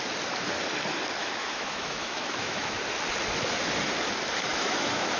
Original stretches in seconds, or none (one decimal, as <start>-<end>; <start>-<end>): 0.0-1.2; 2.8-4.5